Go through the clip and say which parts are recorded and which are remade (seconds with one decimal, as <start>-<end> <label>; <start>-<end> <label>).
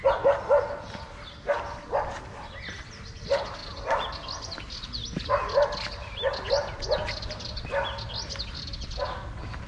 0.0-9.7 recorded